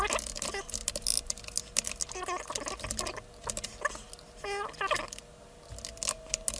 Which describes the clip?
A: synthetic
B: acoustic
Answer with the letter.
B